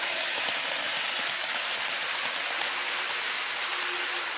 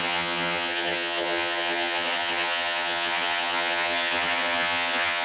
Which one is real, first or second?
first